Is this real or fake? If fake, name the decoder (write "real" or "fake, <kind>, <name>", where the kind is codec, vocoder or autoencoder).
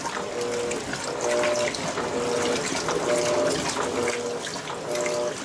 real